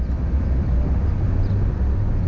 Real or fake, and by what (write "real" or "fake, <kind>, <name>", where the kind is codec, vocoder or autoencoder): real